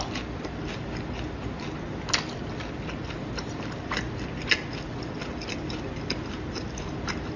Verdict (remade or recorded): recorded